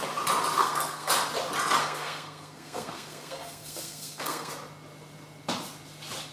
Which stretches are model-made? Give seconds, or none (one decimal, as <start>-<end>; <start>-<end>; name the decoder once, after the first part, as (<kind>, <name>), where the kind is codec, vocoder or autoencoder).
0.6-1.1 (codec, SNAC); 1.8-4.5